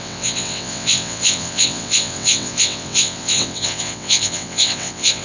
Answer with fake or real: fake